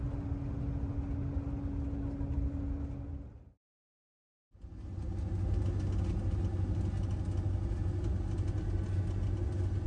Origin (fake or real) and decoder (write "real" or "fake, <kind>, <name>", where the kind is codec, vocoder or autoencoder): real